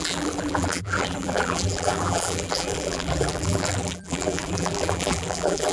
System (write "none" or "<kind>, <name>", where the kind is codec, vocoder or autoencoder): vocoder, BigVGAN v2